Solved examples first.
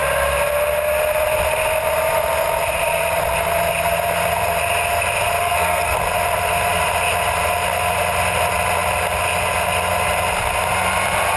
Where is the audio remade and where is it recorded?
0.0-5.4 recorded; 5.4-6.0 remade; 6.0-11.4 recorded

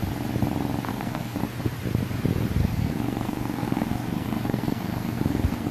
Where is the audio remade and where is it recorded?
0.0-0.9 recorded; 0.9-1.4 remade; 1.4-2.6 recorded; 2.6-5.7 remade

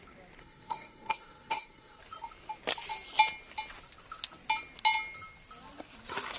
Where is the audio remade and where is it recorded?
0.0-0.4 recorded; 0.4-2.0 remade; 2.0-6.4 recorded